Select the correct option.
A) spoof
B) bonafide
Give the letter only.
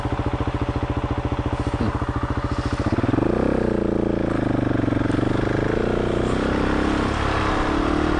B